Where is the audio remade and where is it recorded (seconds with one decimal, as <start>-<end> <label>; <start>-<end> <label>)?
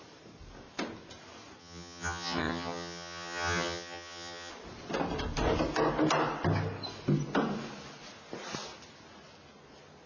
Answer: 0.0-1.6 recorded; 1.6-4.5 remade; 4.5-10.1 recorded